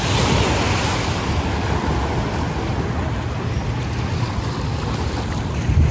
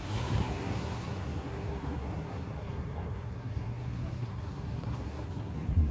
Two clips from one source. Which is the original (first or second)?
first